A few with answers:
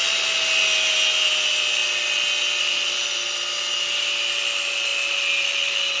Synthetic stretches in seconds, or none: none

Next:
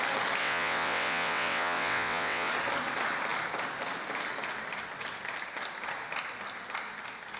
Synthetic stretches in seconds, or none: 0.4-2.5 (vocoder, WaveNeXt)

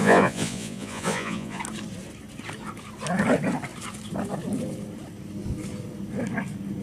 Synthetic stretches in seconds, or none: 0.0-1.6 (vocoder, Vocos)

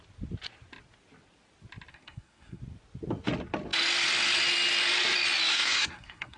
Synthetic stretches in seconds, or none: 1.9-2.6 (codec, SNAC); 5.5-6.4

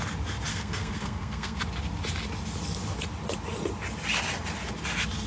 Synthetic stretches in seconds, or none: 0.5-1.6 (codec, SNAC)

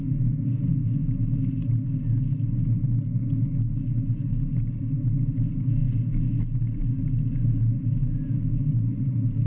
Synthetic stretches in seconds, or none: none

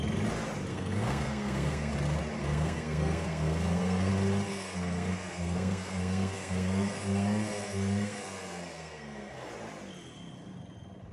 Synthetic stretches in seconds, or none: 0.7-1.9 (codec, SNAC); 2.4-4.1; 4.5-9.5